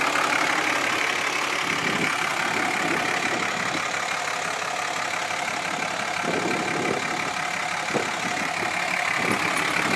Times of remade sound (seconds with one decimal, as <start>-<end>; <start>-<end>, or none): none